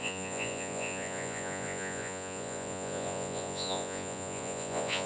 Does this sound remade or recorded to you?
remade